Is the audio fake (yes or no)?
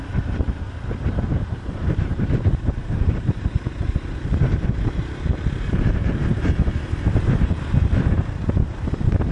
yes